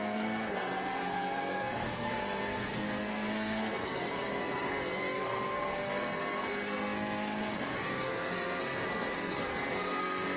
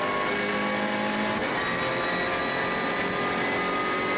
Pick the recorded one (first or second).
second